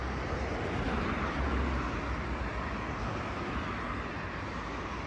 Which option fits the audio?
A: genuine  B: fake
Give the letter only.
A